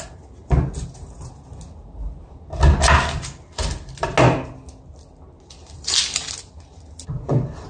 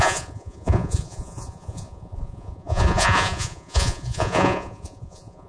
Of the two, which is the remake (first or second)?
second